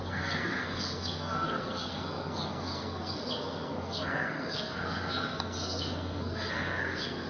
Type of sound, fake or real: fake